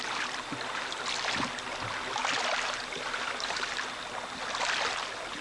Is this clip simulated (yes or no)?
no